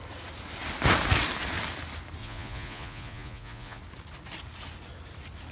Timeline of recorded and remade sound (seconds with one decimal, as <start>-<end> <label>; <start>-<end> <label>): 0.0-2.2 recorded; 2.2-3.8 remade; 3.8-5.5 recorded